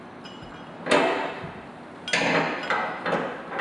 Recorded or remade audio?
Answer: recorded